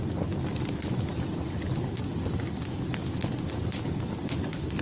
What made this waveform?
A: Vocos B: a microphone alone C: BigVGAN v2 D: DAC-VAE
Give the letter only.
B